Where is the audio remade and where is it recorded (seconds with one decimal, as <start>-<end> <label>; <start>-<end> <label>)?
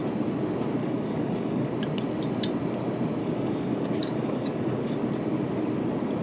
0.0-0.8 recorded; 0.8-1.7 remade; 1.7-3.2 recorded; 3.2-4.9 remade; 4.9-6.2 recorded